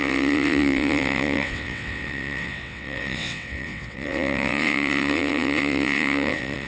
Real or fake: fake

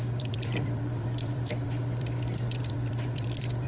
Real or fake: fake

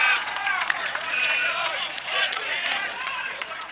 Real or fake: fake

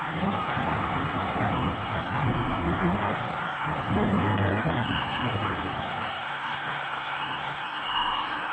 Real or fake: fake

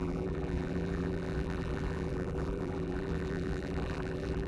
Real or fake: fake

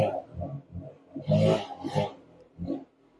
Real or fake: real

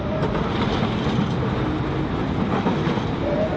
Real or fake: real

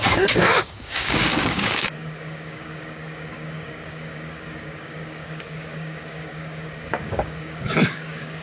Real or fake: fake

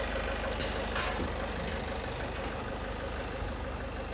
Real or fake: real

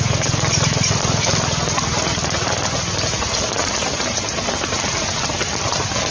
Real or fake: real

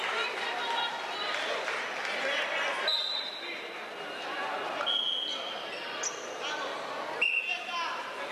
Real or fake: real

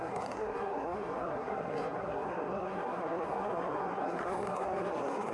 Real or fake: fake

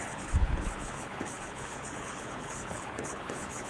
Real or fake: fake